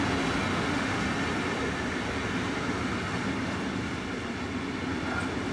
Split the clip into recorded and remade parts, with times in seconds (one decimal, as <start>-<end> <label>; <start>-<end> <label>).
0.0-0.5 recorded; 0.5-1.0 remade; 1.0-5.5 recorded